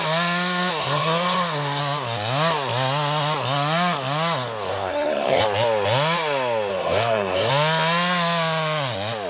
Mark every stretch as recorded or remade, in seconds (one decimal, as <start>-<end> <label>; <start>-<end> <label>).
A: 0.0-0.8 recorded; 0.8-1.8 remade; 1.8-4.7 recorded; 4.7-5.4 remade; 5.4-6.7 recorded; 6.7-7.5 remade; 7.5-9.3 recorded